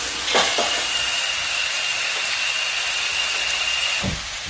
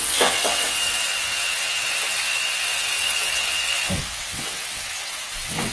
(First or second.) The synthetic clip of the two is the second